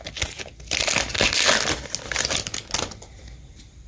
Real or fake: real